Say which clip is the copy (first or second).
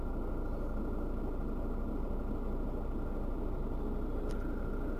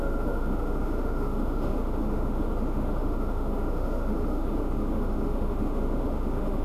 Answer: second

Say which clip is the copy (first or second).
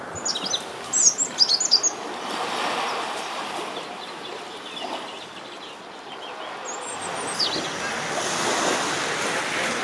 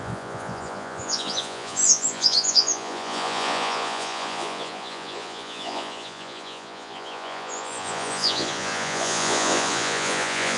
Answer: second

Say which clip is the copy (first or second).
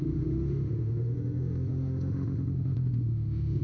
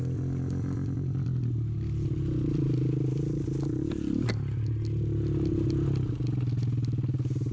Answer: first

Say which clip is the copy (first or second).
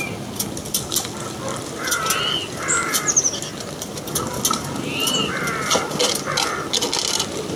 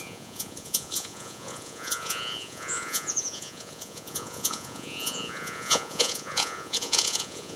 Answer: second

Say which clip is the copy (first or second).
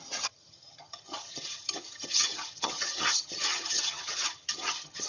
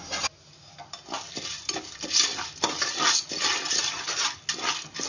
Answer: first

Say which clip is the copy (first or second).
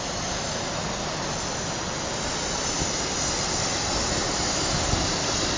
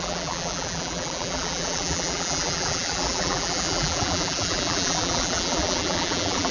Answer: second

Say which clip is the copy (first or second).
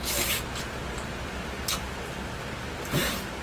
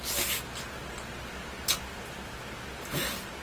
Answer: first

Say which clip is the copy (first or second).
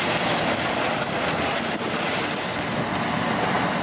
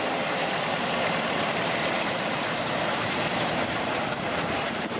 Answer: second